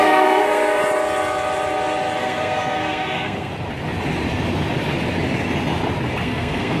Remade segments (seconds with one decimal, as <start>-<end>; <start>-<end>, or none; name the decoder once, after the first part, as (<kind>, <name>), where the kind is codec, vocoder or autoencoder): 0.0-0.8 (codec, SNAC); 2.2-3.5; 6.2-6.8